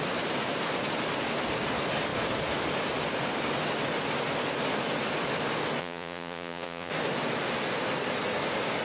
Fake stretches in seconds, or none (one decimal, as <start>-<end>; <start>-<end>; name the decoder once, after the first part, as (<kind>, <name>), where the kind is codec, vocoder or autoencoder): 5.8-6.9 (vocoder, Vocos)